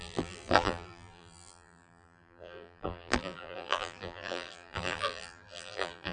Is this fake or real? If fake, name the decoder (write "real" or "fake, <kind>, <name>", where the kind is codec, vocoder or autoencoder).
fake, vocoder, BigVGAN v2